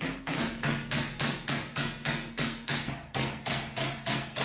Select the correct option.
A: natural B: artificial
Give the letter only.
B